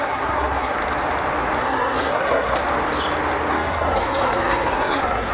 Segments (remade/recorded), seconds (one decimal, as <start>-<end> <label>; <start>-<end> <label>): 0.0-0.8 remade; 0.8-1.6 recorded; 1.6-2.6 remade; 2.6-3.5 recorded; 3.5-5.3 remade